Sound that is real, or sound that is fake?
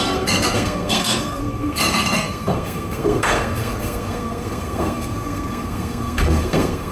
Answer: fake